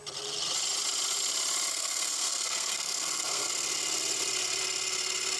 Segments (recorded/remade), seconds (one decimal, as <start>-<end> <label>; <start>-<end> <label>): 0.0-1.7 recorded; 1.7-3.5 remade; 3.5-5.4 recorded